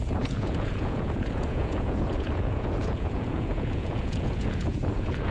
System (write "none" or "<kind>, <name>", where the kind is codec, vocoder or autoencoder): vocoder, Vocos